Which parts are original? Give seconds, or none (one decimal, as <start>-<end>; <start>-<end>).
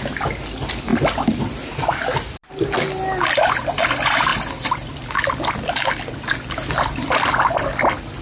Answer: 0.0-0.9; 1.8-8.2